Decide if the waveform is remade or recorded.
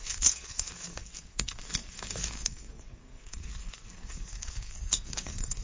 remade